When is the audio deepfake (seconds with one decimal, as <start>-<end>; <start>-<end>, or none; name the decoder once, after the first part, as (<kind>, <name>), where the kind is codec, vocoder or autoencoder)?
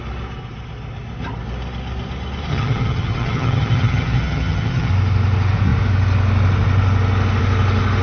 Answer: 2.5-4.9 (vocoder, HiFi-GAN)